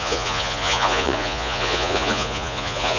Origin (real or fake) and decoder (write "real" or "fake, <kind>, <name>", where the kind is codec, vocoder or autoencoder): fake, vocoder, Vocos